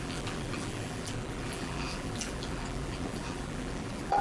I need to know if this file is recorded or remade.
remade